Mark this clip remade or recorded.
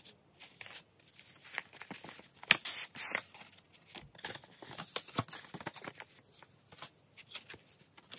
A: recorded